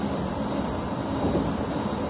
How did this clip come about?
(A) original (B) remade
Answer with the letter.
A